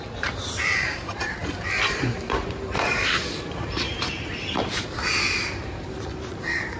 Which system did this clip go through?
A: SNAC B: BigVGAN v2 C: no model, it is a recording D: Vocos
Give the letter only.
B